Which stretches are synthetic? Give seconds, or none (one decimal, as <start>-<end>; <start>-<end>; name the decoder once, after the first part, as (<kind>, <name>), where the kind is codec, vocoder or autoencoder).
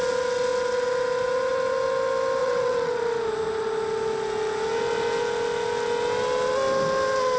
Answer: 2.4-3.0 (vocoder, WaveNeXt)